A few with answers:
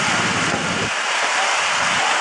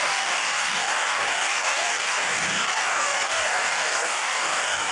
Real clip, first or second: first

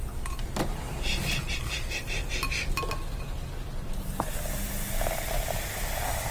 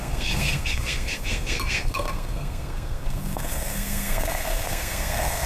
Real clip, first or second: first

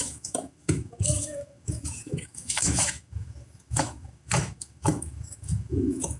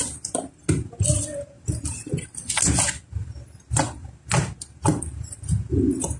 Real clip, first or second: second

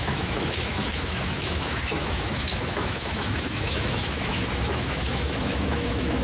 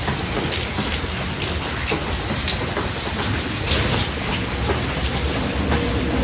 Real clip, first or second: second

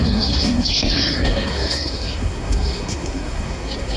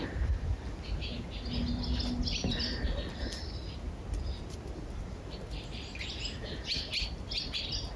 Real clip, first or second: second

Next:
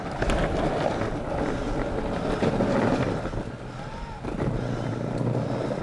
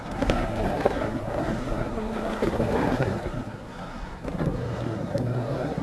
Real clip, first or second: first